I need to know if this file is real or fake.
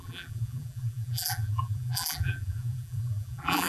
fake